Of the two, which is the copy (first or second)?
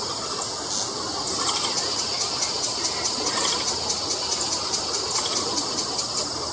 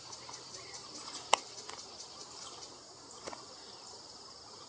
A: second